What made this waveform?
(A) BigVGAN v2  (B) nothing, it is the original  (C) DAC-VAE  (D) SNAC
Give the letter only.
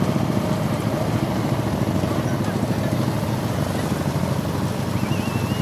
B